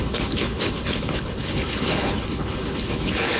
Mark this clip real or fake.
fake